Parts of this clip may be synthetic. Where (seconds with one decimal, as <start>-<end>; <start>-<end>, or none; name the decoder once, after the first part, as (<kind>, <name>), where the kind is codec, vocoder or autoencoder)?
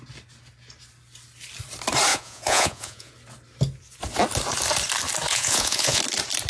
2.1-3.1 (vocoder, Vocos); 5.3-6.0